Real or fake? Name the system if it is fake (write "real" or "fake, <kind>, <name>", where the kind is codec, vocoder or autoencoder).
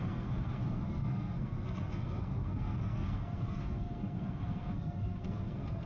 fake, codec, SNAC